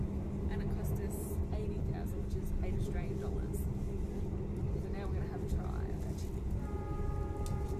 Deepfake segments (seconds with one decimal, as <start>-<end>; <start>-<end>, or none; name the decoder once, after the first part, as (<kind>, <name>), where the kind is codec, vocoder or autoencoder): none